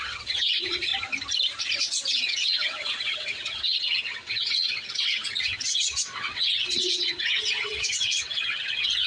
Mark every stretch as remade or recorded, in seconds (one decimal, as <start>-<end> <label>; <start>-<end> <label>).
0.0-0.9 remade; 0.9-1.8 recorded; 1.8-9.1 remade